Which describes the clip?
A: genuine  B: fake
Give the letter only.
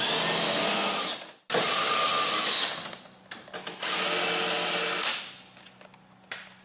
A